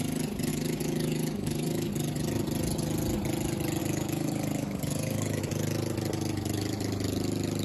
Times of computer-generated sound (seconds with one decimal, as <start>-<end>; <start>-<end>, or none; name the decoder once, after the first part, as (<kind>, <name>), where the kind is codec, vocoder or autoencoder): 0.5-1.9 (codec, DAC); 3.8-5.4